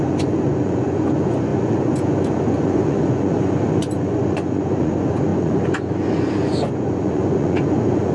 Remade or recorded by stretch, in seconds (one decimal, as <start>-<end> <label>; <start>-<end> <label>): 0.0-8.1 remade